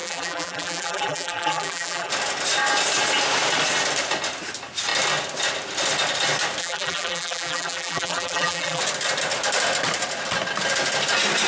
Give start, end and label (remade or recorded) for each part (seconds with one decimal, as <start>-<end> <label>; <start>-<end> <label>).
0.0-2.1 remade; 2.1-6.6 recorded; 6.6-8.8 remade; 8.8-11.5 recorded